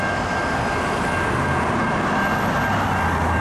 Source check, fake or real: real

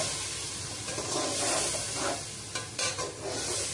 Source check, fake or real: real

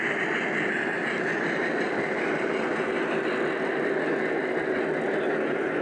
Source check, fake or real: real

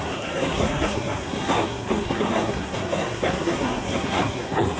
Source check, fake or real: fake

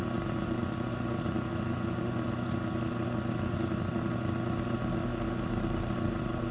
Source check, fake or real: real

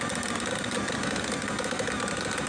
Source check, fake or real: real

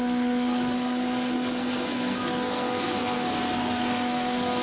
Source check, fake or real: fake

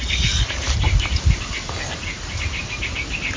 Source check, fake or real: real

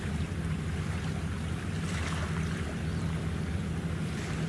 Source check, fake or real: real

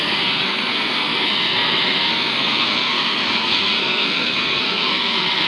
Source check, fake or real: fake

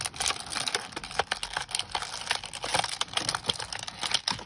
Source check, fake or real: real